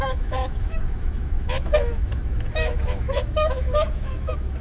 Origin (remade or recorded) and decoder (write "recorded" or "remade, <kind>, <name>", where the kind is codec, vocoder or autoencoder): remade, autoencoder, DAC-VAE